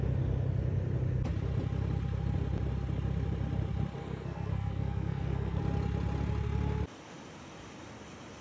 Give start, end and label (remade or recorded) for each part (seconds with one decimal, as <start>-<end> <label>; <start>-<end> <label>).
0.0-4.0 recorded; 4.0-5.6 remade; 5.6-8.4 recorded